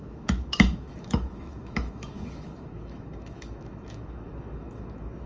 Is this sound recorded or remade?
remade